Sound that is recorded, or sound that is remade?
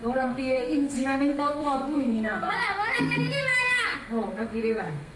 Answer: remade